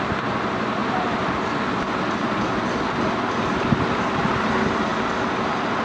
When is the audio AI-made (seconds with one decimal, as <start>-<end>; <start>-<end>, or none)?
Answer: 0.0-4.9